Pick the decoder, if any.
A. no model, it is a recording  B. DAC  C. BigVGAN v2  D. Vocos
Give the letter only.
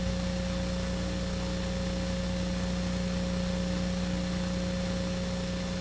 A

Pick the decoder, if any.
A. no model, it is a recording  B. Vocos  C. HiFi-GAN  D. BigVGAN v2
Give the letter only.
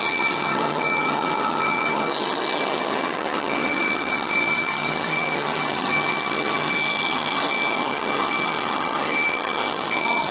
C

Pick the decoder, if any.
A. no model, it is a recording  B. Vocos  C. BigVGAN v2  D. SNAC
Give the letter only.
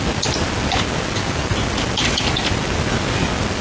A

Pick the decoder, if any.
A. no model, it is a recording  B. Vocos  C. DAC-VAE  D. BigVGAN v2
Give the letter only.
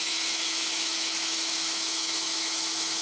C